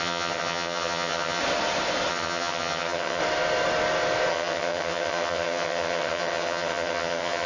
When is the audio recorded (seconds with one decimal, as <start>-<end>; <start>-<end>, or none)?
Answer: 1.4-2.1; 3.2-4.3